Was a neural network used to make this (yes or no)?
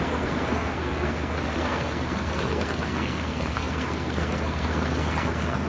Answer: yes